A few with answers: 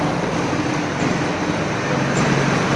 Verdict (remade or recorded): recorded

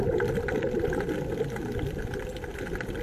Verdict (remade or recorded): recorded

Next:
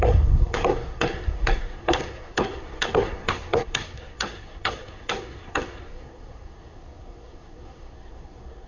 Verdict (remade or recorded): remade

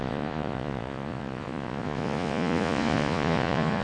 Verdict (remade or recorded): remade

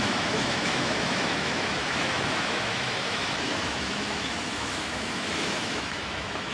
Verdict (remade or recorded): remade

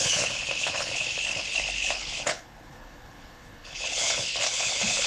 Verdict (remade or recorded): remade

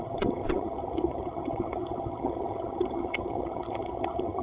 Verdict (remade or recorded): remade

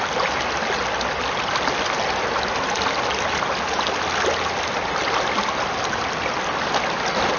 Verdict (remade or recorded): recorded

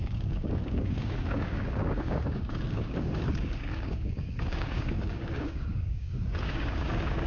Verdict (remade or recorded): remade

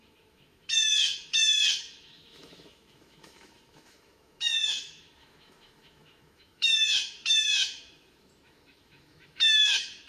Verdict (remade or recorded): remade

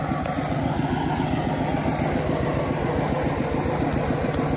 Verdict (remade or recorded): recorded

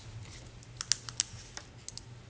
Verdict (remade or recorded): recorded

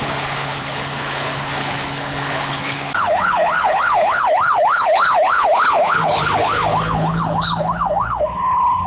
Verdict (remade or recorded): remade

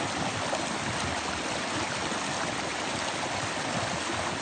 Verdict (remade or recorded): recorded